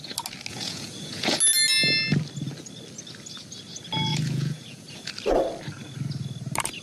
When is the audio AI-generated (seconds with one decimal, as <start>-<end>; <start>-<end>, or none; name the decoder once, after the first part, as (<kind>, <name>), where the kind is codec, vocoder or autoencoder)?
0.5-1.4 (vocoder, Vocos); 4.1-5.1